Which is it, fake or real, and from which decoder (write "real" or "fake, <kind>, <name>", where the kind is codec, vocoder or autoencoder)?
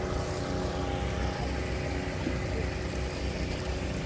real